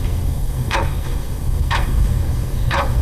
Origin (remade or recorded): remade